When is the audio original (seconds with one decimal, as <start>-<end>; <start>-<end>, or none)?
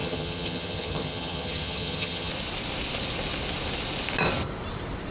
2.3-5.1